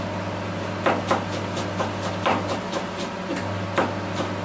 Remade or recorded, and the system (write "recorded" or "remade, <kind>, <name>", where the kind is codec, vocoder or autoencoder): recorded